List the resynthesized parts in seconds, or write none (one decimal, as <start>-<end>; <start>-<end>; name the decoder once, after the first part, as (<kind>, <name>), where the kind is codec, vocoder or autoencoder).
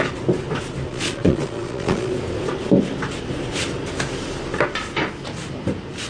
0.9-2.1 (vocoder, Vocos)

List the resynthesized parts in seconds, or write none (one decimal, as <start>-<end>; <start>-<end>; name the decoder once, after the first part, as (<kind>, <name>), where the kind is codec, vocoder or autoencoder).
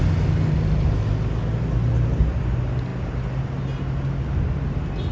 none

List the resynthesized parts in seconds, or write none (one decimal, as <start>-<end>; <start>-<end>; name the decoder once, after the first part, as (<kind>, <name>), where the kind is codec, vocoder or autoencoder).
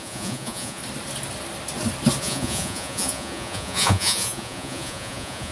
0.0-0.8 (vocoder, Vocos); 2.2-5.5